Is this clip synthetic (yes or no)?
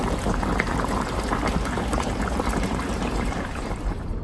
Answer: yes